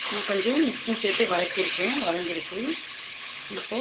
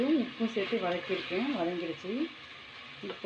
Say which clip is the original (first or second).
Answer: second